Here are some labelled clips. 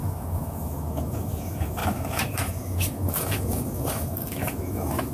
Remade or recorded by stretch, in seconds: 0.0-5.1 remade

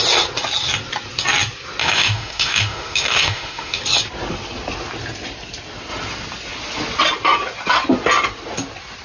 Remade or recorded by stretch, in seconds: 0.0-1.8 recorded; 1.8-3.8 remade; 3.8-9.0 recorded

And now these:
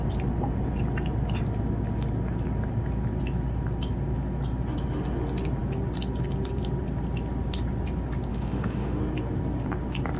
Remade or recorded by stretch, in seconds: 0.0-8.3 recorded; 8.3-9.0 remade; 9.0-10.2 recorded

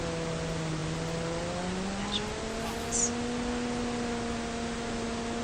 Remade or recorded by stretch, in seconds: 0.0-5.4 recorded